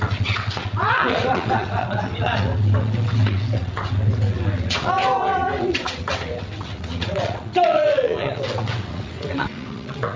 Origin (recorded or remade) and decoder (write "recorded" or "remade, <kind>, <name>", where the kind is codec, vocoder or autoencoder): remade, vocoder, WaveNeXt